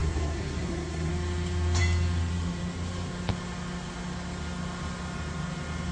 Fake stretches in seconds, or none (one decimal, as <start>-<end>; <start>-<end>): 0.0-1.1